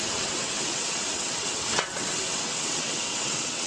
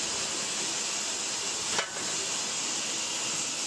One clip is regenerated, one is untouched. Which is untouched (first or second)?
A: second